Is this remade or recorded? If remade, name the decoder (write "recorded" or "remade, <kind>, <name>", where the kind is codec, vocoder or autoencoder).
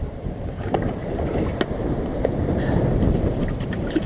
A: remade, vocoder, BigVGAN v2